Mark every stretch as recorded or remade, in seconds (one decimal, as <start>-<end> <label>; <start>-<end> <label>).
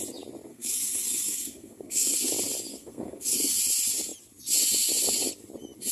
0.0-0.5 recorded; 0.5-2.3 remade; 2.3-2.7 recorded; 2.7-3.6 remade; 3.6-5.9 recorded